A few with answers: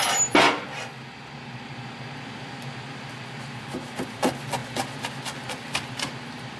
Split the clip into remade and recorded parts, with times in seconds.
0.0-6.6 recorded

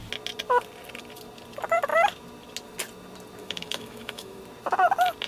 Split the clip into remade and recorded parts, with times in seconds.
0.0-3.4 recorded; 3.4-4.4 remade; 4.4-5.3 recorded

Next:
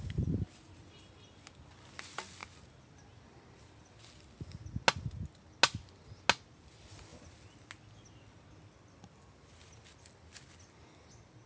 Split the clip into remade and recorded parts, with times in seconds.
0.0-11.5 recorded

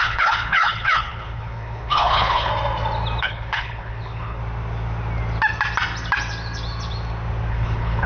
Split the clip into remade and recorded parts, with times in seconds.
0.0-2.5 remade; 2.5-3.2 recorded; 3.2-4.4 remade; 4.4-7.5 recorded; 7.5-8.1 remade

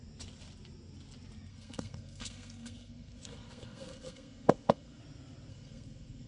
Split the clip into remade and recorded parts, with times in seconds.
0.0-1.5 recorded; 1.5-5.0 remade; 5.0-5.5 recorded; 5.5-6.3 remade

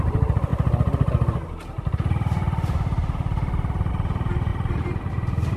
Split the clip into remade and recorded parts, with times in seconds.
0.0-4.5 recorded; 4.5-5.1 remade; 5.1-5.6 recorded

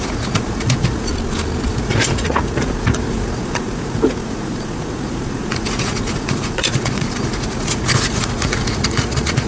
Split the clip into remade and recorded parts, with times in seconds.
0.0-1.1 remade; 1.1-1.7 recorded; 1.7-9.5 remade